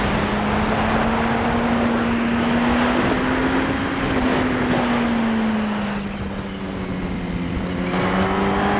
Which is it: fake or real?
real